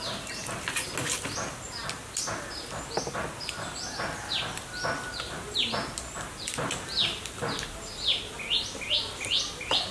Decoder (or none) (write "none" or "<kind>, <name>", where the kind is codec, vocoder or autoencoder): none